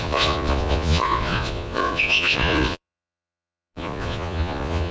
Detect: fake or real fake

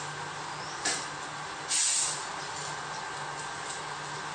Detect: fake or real real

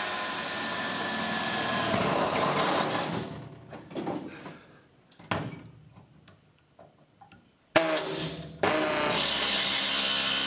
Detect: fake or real real